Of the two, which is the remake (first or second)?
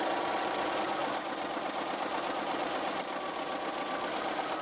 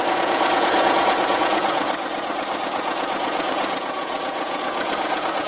second